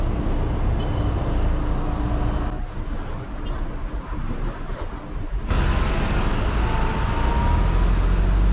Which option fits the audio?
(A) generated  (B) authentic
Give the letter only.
B